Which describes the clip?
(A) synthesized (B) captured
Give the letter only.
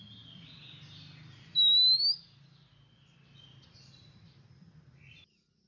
B